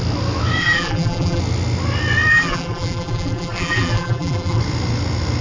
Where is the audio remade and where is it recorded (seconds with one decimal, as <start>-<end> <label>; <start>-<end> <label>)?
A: 0.0-0.6 recorded; 0.6-1.4 remade; 1.4-2.3 recorded; 2.3-4.6 remade; 4.6-5.4 recorded